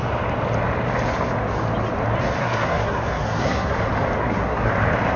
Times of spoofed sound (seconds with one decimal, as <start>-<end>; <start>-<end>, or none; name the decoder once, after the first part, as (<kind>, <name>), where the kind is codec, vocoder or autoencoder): 2.4-3.8 (codec, SNAC); 4.2-4.7